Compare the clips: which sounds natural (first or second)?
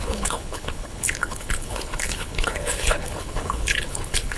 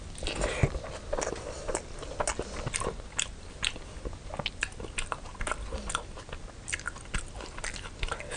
second